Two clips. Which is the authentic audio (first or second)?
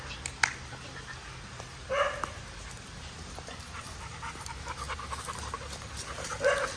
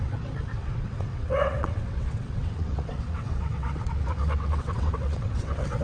first